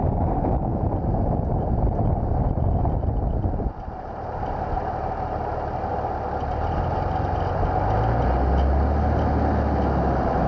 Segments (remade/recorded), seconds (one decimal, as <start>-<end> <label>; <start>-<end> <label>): 0.0-10.5 recorded